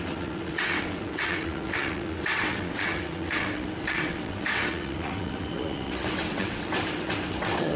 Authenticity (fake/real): fake